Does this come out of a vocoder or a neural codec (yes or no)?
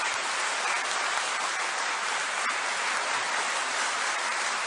no